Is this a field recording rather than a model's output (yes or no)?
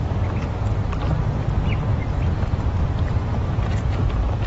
yes